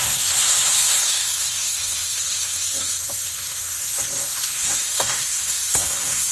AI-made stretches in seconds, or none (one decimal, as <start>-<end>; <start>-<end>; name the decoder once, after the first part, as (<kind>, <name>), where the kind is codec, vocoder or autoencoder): 0.0-6.3 (codec, SNAC)